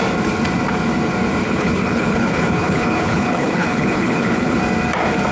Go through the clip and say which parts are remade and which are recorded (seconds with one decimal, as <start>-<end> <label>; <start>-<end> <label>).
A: 0.0-1.4 recorded; 1.4-4.6 remade; 4.6-5.3 recorded